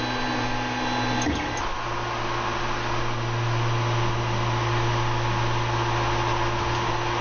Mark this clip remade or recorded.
recorded